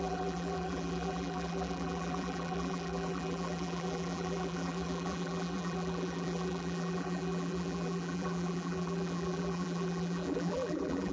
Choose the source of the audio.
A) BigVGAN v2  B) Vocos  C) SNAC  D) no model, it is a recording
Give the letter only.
A